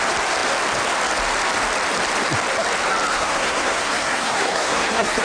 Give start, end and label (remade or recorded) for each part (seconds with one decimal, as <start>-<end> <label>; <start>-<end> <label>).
0.0-3.1 recorded; 3.1-5.2 remade